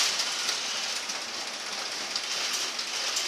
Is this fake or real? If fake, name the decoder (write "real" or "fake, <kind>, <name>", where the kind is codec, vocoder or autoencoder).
real